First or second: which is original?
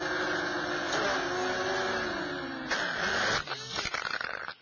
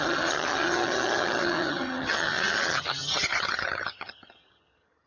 first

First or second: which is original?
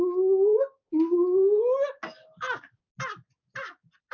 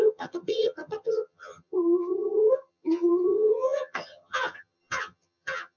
first